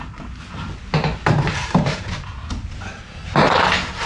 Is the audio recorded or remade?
recorded